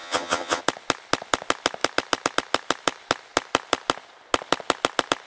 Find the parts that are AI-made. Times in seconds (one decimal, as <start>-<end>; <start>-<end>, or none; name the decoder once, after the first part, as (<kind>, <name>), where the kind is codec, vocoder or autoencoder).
0.0-0.6 (vocoder, HiFi-GAN)